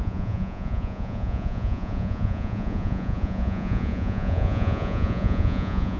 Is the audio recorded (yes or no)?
no